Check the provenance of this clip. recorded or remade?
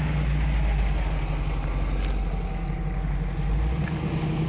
recorded